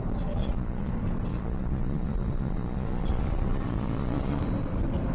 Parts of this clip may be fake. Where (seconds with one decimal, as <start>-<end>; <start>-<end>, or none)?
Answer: 0.4-0.9; 1.3-4.4